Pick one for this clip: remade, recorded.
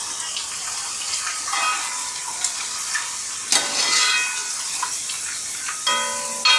recorded